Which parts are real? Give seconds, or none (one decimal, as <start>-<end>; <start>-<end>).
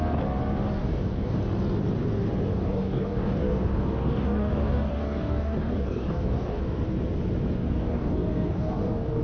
0.0-0.8; 1.4-2.5; 6.6-7.7